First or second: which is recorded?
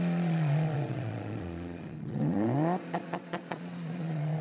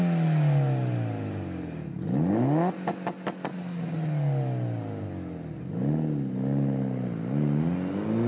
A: second